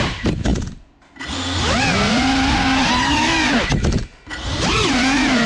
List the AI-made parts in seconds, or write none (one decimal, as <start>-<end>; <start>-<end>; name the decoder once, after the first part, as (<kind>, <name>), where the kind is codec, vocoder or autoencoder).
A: none

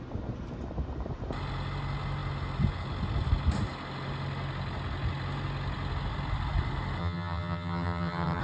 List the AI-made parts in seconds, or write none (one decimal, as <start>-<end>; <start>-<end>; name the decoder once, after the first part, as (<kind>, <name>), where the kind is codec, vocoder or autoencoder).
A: 7.0-8.4 (vocoder, HiFi-GAN)